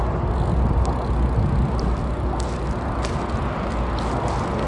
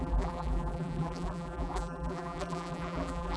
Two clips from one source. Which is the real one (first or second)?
first